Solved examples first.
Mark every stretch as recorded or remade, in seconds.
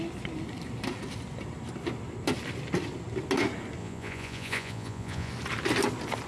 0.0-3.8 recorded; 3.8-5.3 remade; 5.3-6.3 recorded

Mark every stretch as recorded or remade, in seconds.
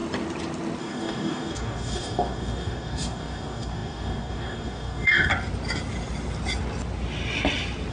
0.0-0.8 recorded; 0.8-5.3 remade; 5.3-7.9 recorded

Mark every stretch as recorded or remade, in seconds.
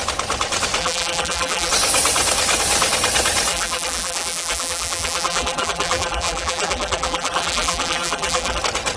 0.0-0.8 recorded; 0.8-1.7 remade; 1.7-3.5 recorded; 3.5-8.6 remade; 8.6-9.0 recorded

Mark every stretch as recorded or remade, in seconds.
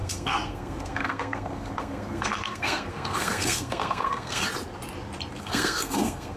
0.0-4.4 remade; 4.4-5.4 recorded; 5.4-6.4 remade